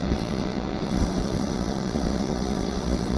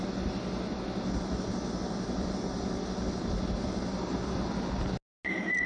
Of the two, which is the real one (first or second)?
second